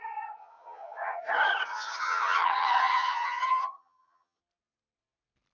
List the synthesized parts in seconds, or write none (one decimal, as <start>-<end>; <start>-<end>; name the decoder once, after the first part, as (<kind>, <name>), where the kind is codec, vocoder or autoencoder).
0.4-1.2 (vocoder, HiFi-GAN); 1.7-4.4